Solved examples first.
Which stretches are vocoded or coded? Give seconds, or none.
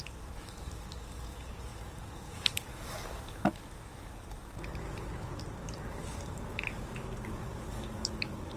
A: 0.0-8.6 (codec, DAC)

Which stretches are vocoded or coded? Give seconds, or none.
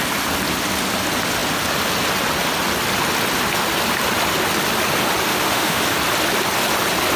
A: 5.3-5.8 (autoencoder, DAC-VAE)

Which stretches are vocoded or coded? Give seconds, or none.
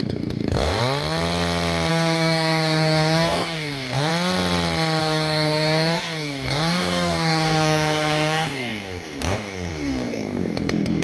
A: 0.0-0.8 (codec, DAC); 1.9-4.1; 5.0-11.0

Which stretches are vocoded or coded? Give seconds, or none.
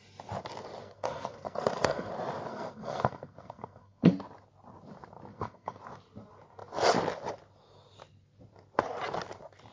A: 0.8-2.1 (codec, SNAC); 2.5-4.1; 5.3-5.8